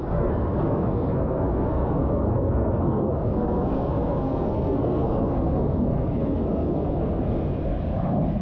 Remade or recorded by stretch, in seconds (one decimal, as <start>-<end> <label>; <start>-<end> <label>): 0.0-7.5 remade; 7.5-8.4 recorded

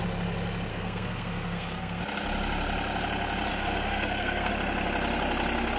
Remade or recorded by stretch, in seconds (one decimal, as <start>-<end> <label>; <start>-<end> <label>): 0.0-0.7 recorded; 0.7-2.0 remade; 2.0-3.5 recorded; 3.5-4.5 remade; 4.5-5.8 recorded

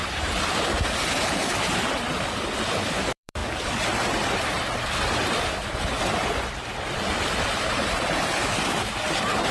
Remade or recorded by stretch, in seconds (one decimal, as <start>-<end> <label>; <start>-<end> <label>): 0.0-8.4 remade; 8.4-9.5 recorded